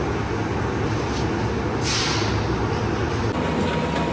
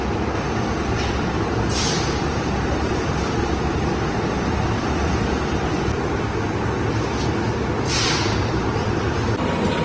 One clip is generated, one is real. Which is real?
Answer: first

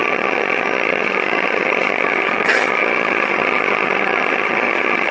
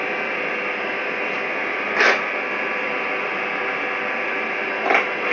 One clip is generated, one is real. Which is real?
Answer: second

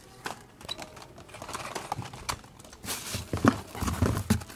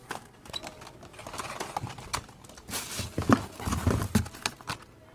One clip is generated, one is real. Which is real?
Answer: second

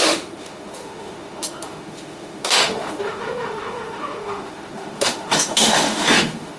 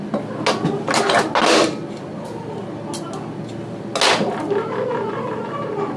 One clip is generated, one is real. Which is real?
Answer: second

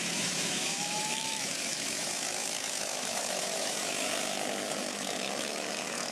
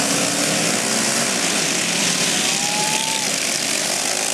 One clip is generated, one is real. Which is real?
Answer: second